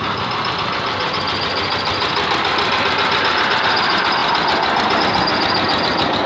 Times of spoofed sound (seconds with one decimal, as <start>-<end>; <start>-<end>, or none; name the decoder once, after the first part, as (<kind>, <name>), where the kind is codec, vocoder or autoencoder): none